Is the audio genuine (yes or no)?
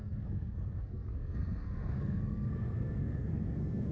no